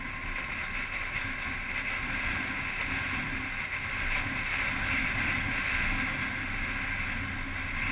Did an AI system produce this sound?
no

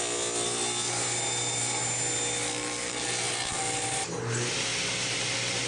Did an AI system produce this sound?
no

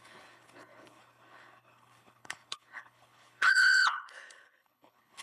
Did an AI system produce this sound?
yes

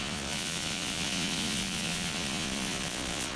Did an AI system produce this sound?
yes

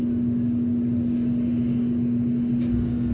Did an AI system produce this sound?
no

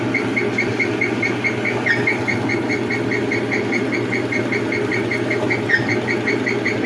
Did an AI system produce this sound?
no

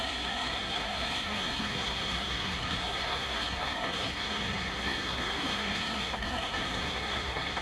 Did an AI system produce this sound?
yes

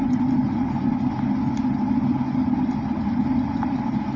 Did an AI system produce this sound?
no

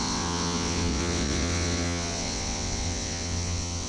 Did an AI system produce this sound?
yes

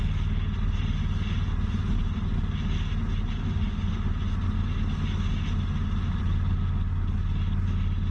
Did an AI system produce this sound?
no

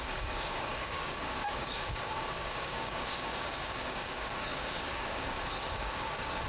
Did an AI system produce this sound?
yes